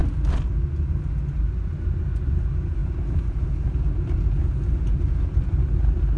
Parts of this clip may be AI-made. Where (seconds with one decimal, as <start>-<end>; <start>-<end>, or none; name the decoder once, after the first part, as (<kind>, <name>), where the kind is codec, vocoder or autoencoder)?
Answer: none